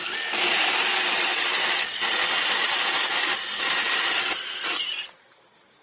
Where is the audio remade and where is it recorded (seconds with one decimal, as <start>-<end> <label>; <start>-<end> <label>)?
0.0-5.8 recorded